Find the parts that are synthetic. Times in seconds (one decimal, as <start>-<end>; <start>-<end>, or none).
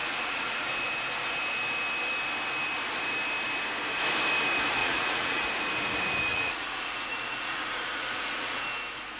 0.0-0.7; 4.8-5.4; 6.3-8.6